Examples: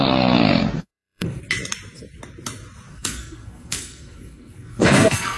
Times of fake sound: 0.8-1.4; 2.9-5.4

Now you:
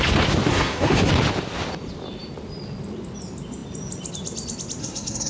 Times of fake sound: 0.5-1.1; 4.8-5.3